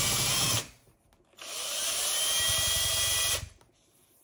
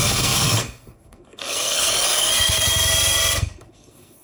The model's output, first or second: second